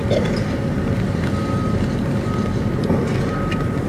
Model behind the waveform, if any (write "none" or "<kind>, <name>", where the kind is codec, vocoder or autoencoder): none